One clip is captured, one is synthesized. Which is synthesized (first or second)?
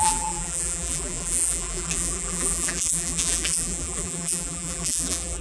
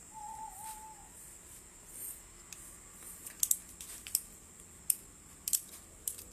first